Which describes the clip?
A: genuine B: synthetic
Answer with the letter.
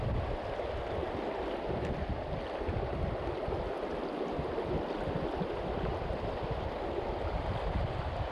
A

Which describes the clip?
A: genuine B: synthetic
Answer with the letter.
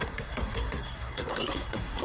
B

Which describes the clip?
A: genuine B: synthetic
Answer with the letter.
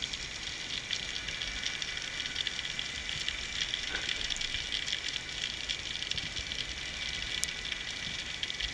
A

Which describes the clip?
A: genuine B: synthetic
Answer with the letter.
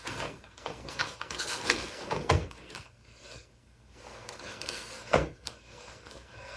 B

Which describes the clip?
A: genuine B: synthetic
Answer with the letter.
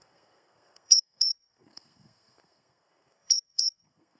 B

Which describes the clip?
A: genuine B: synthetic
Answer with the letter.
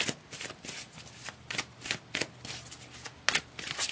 A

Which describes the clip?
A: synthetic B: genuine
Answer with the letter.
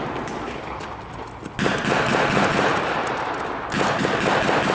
B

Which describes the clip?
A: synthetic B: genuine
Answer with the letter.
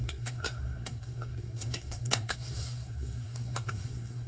A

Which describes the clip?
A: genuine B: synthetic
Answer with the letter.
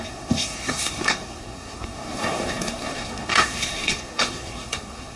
B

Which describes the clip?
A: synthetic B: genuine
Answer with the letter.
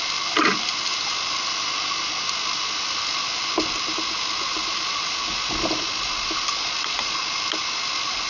B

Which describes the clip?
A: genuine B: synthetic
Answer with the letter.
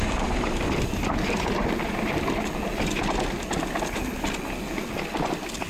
A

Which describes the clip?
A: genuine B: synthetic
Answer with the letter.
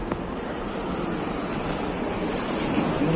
A